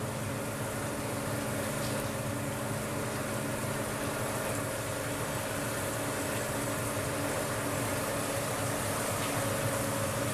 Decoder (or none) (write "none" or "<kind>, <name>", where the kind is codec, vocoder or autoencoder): none